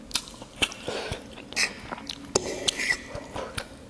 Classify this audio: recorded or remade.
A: recorded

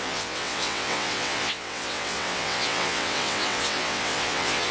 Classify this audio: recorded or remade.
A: remade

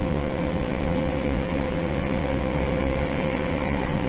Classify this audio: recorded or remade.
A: remade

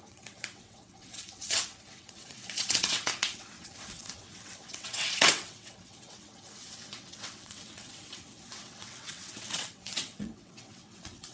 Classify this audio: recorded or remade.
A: remade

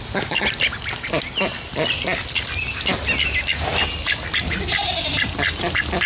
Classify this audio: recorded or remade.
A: recorded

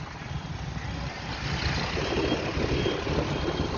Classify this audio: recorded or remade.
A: recorded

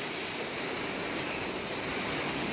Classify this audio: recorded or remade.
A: recorded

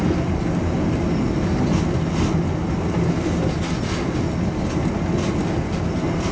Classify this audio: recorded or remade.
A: recorded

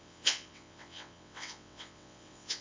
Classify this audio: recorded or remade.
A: remade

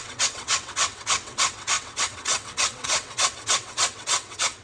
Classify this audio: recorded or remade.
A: remade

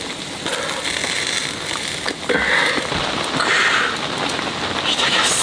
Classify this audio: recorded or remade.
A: recorded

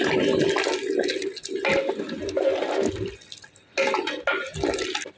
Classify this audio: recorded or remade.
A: recorded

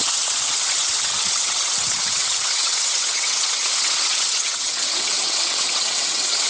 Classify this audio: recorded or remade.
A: remade